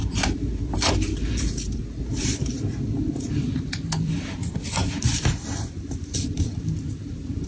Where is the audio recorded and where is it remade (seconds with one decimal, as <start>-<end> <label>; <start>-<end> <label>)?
0.0-7.5 remade